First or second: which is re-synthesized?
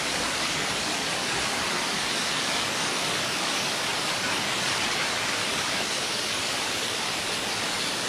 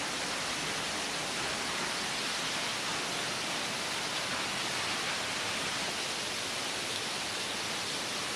first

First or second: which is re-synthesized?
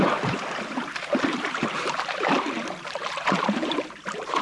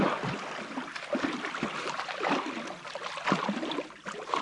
first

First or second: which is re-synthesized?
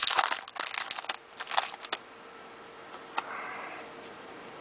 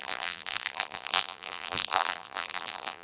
second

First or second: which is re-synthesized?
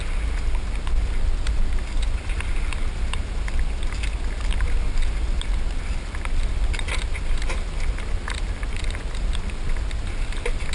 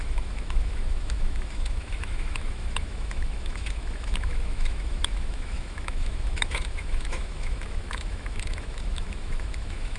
second